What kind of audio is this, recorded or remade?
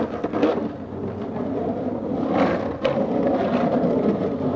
recorded